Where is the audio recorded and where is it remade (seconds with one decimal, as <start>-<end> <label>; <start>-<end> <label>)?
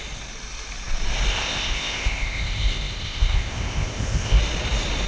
0.0-1.3 recorded; 1.3-4.4 remade; 4.4-5.1 recorded